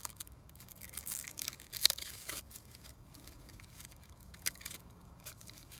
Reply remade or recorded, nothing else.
remade